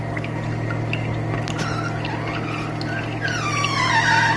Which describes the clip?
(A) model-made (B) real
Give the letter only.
B